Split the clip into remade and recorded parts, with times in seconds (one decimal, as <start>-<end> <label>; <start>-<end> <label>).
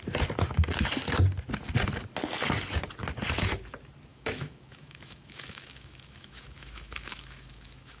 0.0-4.1 recorded; 4.1-8.0 remade